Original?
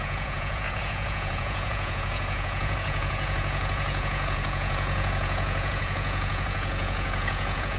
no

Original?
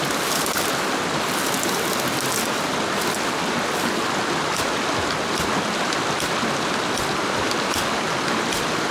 yes